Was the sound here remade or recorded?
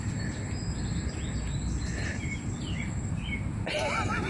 recorded